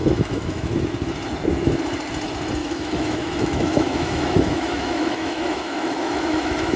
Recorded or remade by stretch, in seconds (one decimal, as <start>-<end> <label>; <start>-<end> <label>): 0.0-0.7 remade; 0.7-2.6 recorded; 2.6-6.8 remade